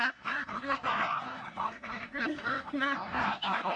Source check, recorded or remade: remade